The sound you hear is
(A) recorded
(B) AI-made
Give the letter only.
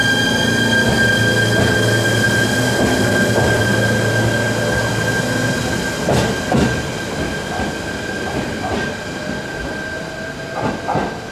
A